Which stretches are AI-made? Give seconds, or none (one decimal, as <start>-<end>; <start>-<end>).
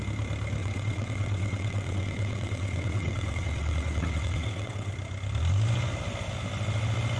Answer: 0.6-4.9